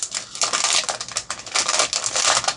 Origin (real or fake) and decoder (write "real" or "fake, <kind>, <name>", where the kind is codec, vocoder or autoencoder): real